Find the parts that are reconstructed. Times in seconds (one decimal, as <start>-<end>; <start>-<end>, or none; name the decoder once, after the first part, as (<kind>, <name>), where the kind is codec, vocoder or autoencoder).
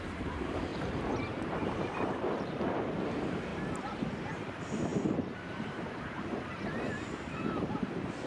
0.0-3.5 (vocoder, BigVGAN v2); 4.1-8.3